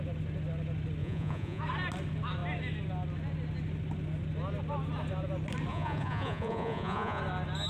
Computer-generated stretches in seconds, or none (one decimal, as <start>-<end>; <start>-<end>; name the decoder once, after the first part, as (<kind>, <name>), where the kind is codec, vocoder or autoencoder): 1.0-1.6 (vocoder, Vocos); 5.7-7.2